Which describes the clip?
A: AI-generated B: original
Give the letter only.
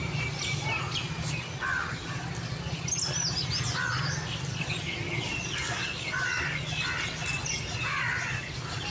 B